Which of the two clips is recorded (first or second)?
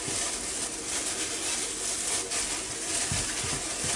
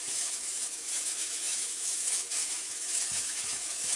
first